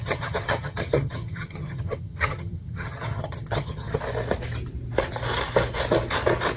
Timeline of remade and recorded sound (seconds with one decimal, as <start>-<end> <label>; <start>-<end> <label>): 0.0-4.0 remade; 4.0-6.6 recorded